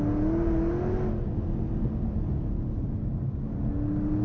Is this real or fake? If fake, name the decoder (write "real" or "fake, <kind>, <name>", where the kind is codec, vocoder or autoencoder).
real